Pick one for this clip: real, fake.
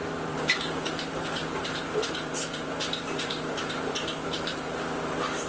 fake